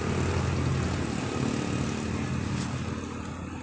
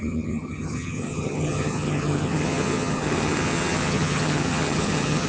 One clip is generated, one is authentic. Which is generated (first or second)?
second